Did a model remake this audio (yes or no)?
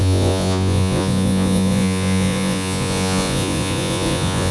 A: yes